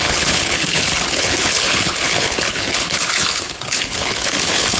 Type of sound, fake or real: fake